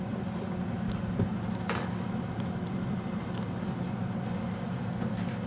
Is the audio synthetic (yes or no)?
no